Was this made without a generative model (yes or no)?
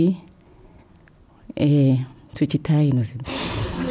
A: yes